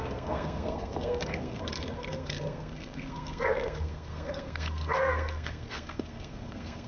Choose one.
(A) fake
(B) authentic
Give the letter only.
A